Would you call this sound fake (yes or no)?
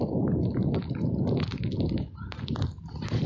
no